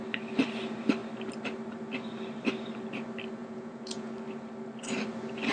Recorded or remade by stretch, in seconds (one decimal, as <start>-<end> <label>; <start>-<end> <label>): 0.0-3.4 recorded; 3.4-4.1 remade; 4.1-5.5 recorded